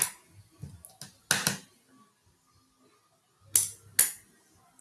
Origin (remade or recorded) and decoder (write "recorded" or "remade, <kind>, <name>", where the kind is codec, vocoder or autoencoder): recorded